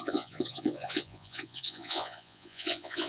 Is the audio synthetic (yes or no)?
yes